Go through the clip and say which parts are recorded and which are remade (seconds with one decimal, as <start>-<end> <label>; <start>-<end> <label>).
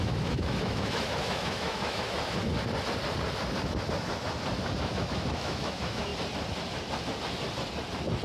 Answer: 0.0-2.5 remade; 2.5-4.8 recorded; 4.8-6.1 remade; 6.1-8.2 recorded